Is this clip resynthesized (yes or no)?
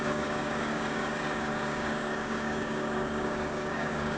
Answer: yes